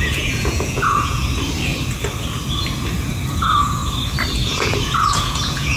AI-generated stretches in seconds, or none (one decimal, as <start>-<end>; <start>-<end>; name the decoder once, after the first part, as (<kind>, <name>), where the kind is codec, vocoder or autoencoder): 0.0-1.2 (vocoder, Vocos); 3.3-3.8; 4.3-5.8

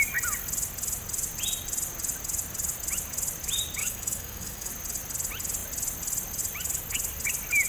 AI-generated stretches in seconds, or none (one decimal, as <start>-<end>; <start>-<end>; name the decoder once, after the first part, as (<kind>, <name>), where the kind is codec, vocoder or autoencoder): 3.8-4.7 (codec, DAC)

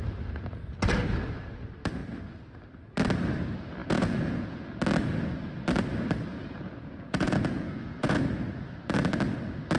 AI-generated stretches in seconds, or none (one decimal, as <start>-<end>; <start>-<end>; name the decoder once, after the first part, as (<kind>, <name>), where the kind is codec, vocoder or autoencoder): 3.8-4.6 (vocoder, Vocos); 6.3-8.2

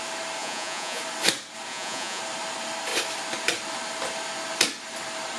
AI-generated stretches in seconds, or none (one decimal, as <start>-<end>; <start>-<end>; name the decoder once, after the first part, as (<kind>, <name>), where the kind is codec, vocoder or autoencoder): 0.4-1.0 (vocoder, Vocos); 1.7-2.2

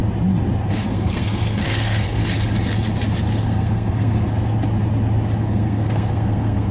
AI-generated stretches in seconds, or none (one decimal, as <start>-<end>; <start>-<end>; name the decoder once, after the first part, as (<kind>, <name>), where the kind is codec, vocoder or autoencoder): 0.7-2.2 (codec, SNAC); 3.4-4.4; 5.4-6.7

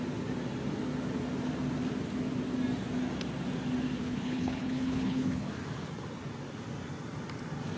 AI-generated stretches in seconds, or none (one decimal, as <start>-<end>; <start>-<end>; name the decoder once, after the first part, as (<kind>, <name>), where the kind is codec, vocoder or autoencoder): 4.0-5.5 (codec, HILCodec)

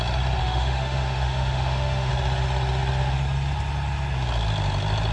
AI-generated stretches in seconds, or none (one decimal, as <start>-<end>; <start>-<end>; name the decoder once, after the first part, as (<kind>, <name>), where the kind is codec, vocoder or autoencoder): 0.4-2.1 (autoencoder, DAC-VAE)